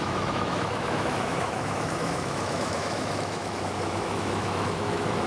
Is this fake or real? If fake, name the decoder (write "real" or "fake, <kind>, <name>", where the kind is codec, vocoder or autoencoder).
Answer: fake, autoencoder, DAC-VAE